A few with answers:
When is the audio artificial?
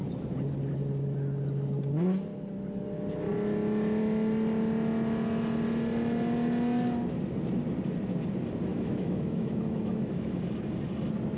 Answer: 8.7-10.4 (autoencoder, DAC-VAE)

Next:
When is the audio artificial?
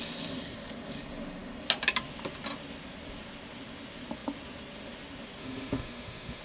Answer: 5.4-6.4 (autoencoder, DAC-VAE)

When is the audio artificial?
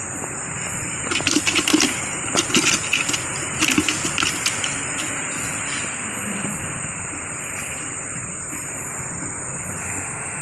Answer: 9.8-10.4 (autoencoder, DAC-VAE)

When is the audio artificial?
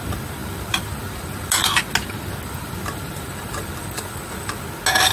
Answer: none